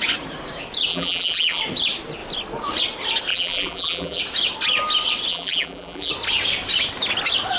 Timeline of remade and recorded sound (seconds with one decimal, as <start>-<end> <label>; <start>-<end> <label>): 0.0-0.9 recorded; 0.9-1.6 remade; 1.6-3.3 recorded; 3.3-4.2 remade; 4.2-5.3 recorded; 5.3-6.1 remade; 6.1-7.6 recorded